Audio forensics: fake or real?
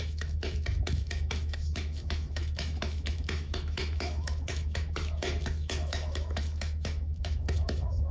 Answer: fake